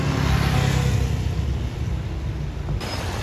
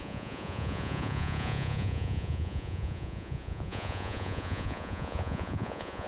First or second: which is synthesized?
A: second